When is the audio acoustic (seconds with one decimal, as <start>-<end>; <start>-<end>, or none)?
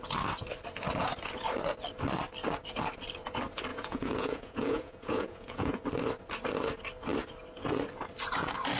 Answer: 0.0-3.7; 5.8-8.8